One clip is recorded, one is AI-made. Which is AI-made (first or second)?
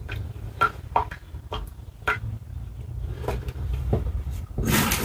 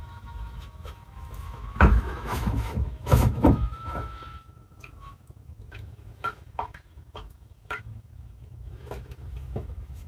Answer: second